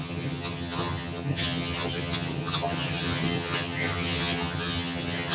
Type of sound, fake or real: fake